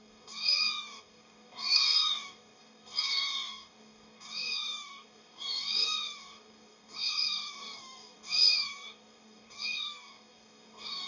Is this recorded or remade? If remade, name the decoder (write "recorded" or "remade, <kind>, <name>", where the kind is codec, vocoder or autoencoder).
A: remade, codec, DAC